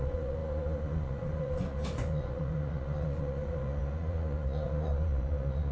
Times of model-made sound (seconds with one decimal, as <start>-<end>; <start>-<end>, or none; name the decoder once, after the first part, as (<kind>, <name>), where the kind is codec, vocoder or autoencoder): 0.0-5.7 (vocoder, Vocos)